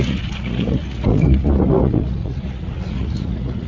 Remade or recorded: remade